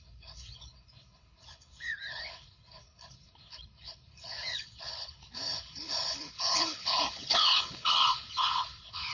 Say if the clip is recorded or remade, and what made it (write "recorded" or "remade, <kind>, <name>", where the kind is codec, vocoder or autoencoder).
remade, codec, HILCodec